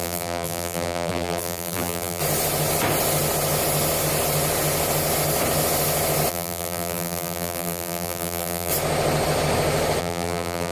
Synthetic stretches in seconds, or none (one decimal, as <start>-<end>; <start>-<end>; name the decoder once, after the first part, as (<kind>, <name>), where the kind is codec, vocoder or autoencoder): 0.0-2.2 (vocoder, BigVGAN v2); 6.3-8.7; 10.0-10.7